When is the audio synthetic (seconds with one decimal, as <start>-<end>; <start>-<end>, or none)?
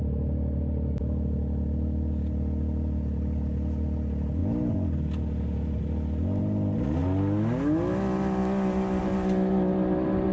none